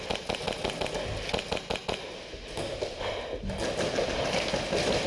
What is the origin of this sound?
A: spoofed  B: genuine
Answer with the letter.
B